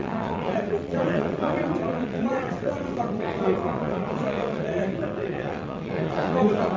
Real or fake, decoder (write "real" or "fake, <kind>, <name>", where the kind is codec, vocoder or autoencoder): fake, vocoder, WaveNeXt